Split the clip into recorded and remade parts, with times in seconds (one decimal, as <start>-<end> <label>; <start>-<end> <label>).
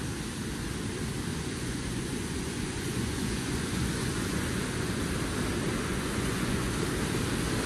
0.0-1.3 recorded; 1.3-5.0 remade; 5.0-5.7 recorded; 5.7-6.7 remade; 6.7-7.7 recorded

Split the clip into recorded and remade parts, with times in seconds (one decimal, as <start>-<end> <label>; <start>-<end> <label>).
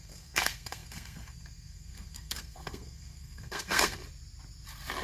0.0-4.0 remade; 4.0-5.0 recorded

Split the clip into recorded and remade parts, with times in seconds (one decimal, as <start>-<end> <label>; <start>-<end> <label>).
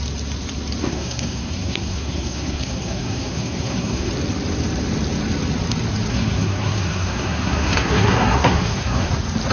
0.0-0.8 recorded; 0.8-4.1 remade; 4.1-6.1 recorded; 6.1-9.1 remade; 9.1-9.5 recorded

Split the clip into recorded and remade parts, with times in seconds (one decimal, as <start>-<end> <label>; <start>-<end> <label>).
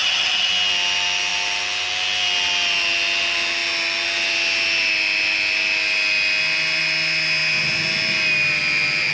0.0-0.5 remade; 0.5-9.1 recorded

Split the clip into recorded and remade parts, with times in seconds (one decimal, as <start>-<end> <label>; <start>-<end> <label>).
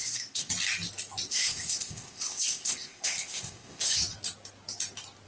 0.0-0.5 remade; 0.5-1.3 recorded; 1.3-4.0 remade; 4.0-5.3 recorded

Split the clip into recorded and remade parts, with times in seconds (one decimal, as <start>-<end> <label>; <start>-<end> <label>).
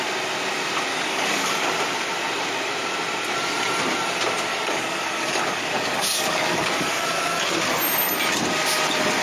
0.0-0.9 recorded; 0.9-1.7 remade; 1.7-4.5 recorded; 4.5-7.5 remade; 7.5-9.2 recorded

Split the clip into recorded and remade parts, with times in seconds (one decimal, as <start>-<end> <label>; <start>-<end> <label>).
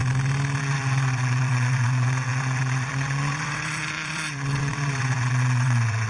0.0-0.6 recorded; 0.6-6.1 remade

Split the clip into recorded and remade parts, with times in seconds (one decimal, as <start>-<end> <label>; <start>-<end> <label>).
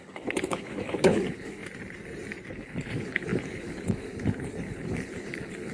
0.0-1.6 remade; 1.6-2.5 recorded; 2.5-5.7 remade